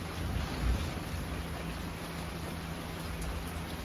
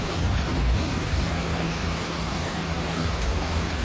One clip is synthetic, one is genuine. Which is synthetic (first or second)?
second